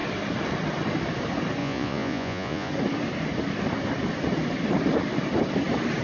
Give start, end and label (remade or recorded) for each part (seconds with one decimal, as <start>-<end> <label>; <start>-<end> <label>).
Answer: 0.0-1.6 recorded; 1.6-2.7 remade; 2.7-6.0 recorded